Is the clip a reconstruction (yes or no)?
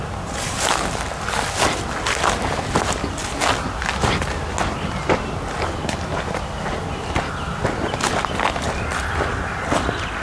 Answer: no